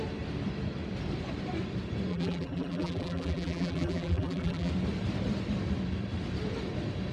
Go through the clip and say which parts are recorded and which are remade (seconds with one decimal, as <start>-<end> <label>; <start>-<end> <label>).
0.0-2.1 recorded; 2.1-4.7 remade; 4.7-7.1 recorded